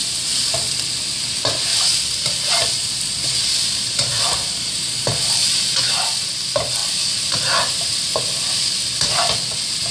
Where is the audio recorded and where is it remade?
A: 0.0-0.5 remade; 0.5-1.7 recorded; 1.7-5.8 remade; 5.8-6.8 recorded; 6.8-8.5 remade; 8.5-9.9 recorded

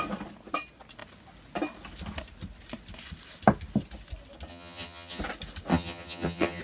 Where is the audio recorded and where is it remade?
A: 0.0-4.5 recorded; 4.5-5.2 remade; 5.2-5.7 recorded; 5.7-6.6 remade

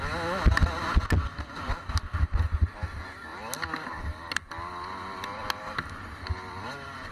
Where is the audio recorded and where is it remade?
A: 0.0-7.1 recorded